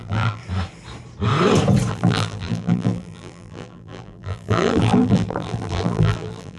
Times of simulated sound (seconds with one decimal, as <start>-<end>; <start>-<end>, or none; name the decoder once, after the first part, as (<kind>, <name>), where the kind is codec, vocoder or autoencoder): 0.0-0.4 (vocoder, BigVGAN v2); 1.9-6.6